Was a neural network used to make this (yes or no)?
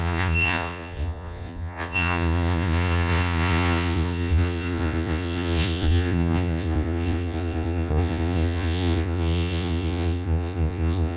yes